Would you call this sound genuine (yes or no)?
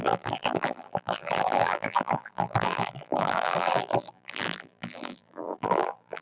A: no